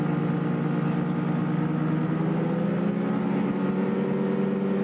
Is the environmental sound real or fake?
real